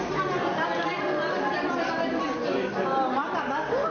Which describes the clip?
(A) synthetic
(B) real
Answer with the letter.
B